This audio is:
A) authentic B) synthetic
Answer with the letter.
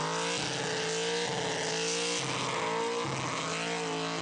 A